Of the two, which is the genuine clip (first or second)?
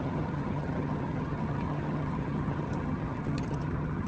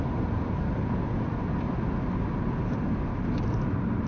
second